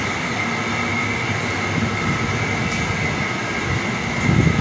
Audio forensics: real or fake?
real